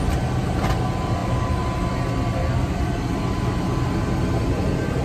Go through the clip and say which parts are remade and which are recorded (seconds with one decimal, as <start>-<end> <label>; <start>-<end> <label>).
0.0-5.0 recorded